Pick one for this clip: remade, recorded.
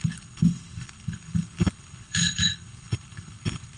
remade